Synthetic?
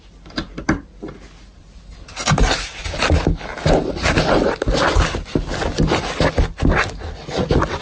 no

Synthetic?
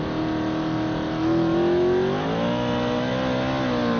no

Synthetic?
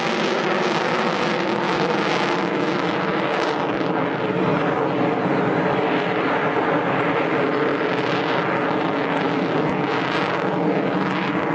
no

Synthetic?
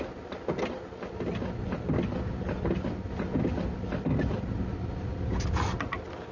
no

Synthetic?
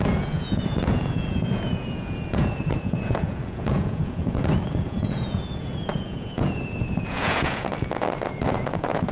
yes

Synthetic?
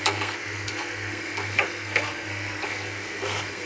yes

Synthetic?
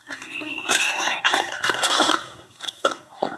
yes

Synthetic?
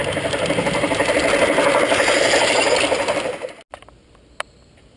no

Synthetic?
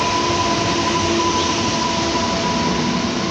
no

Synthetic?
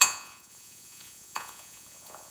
yes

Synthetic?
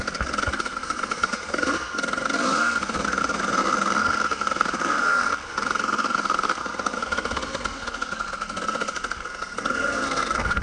yes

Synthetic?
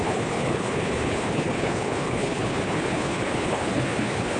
yes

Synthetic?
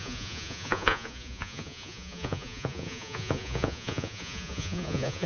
yes